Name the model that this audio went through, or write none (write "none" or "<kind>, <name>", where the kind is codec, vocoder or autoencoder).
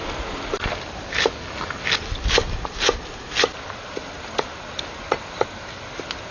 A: none